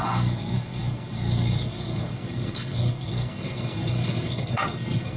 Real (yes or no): no